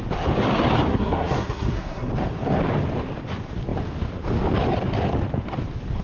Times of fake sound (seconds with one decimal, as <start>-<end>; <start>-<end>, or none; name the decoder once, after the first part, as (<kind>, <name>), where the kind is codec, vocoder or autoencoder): 0.9-2.1 (codec, SNAC)